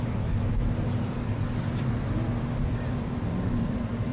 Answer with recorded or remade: remade